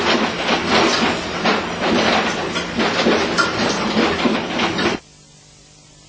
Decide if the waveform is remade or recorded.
recorded